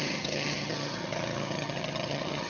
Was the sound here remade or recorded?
remade